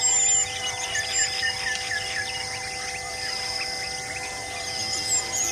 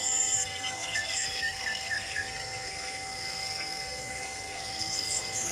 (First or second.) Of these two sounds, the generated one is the second